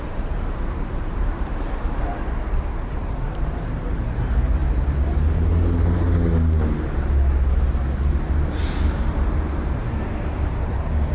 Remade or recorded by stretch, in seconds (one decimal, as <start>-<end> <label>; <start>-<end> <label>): 0.0-2.0 remade; 2.0-3.0 recorded; 3.0-4.6 remade; 4.6-8.1 recorded; 8.1-11.1 remade